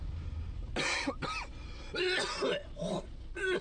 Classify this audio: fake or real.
real